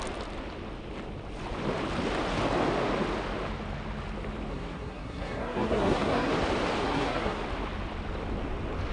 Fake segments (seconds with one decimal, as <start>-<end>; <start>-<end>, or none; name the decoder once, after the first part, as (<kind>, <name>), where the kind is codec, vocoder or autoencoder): 4.5-6.3 (codec, SNAC); 6.8-7.4